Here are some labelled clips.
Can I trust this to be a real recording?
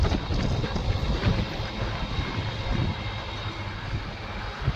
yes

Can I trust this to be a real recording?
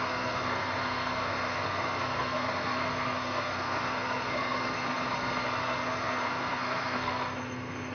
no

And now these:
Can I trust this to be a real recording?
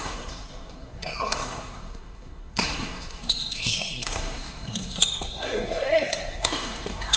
no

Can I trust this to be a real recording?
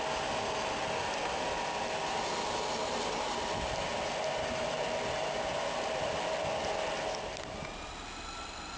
yes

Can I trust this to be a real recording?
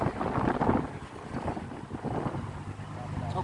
yes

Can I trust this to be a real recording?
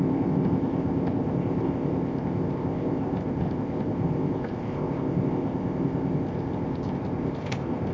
no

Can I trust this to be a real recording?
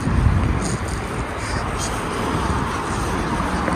yes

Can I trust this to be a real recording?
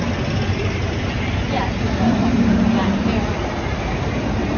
yes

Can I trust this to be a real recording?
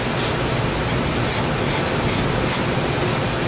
yes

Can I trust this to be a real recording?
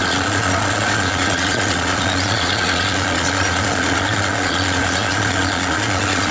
no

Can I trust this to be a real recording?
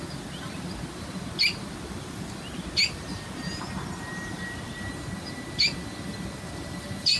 yes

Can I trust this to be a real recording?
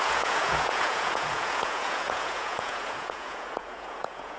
no